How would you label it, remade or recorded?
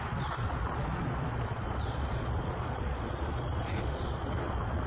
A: remade